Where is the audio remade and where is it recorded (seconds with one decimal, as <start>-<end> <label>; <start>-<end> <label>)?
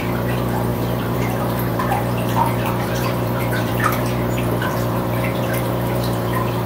0.0-6.7 remade